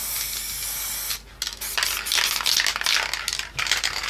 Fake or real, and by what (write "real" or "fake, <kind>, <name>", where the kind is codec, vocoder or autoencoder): real